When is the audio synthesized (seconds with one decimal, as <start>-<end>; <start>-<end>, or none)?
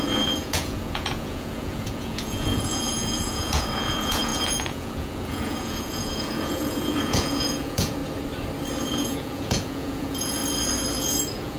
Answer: 0.0-8.0; 8.8-10.4; 11.0-11.6